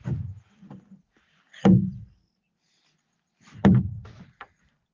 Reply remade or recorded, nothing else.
recorded